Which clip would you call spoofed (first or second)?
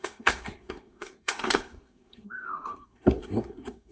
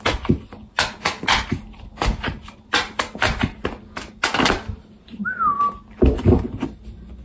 first